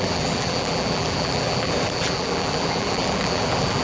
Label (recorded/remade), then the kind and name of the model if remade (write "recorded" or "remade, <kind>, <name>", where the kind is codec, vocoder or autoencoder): remade, vocoder, BigVGAN v2